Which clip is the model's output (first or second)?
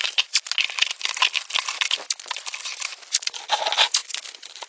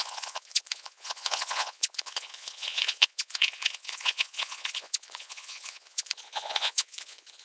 second